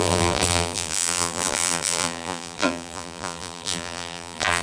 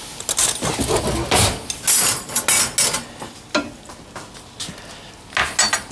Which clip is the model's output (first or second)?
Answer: first